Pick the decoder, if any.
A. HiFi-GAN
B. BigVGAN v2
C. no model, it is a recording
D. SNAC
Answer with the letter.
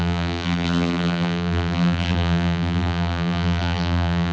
B